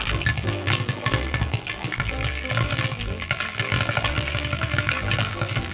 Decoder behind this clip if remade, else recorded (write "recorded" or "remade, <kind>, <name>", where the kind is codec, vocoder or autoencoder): remade, vocoder, BigVGAN v2